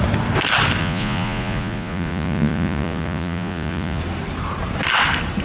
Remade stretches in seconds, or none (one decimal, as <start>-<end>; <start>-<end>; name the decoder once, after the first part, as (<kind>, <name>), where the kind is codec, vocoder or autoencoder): 0.8-4.0 (vocoder, Vocos)